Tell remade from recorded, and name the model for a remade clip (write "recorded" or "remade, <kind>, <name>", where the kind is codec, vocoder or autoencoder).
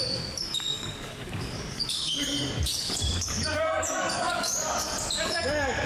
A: remade, codec, DAC